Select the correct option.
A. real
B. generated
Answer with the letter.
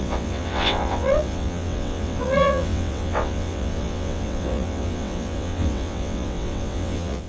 B